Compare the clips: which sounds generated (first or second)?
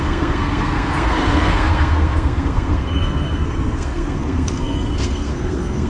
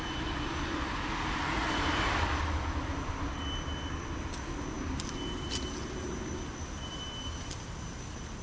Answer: first